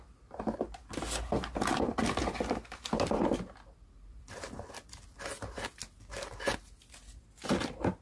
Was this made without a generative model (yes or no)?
yes